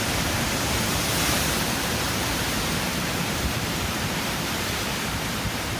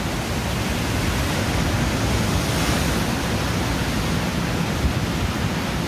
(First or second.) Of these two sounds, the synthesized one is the first